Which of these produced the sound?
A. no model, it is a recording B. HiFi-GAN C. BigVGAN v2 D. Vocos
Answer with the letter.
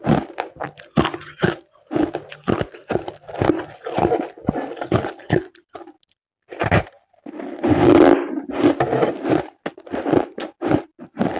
A